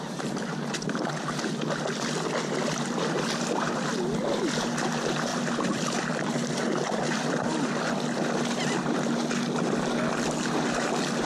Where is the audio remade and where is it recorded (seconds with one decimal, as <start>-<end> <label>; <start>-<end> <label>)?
0.0-5.3 recorded; 5.3-7.6 remade; 7.6-11.3 recorded